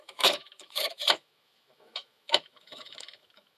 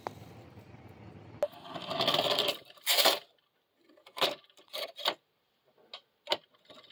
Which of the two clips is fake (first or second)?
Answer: first